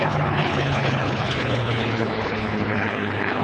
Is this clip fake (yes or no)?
yes